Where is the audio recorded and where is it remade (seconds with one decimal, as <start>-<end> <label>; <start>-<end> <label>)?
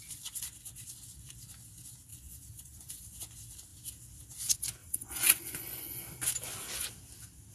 0.0-2.1 recorded; 2.1-3.0 remade; 3.0-4.8 recorded; 4.8-6.0 remade; 6.0-7.5 recorded